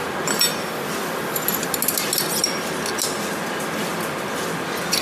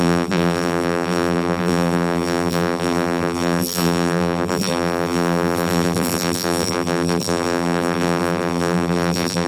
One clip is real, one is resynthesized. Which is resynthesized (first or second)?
second